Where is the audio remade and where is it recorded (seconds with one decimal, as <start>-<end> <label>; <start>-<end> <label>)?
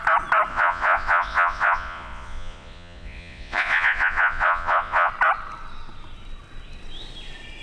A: 0.0-0.5 recorded; 0.5-5.1 remade; 5.1-7.6 recorded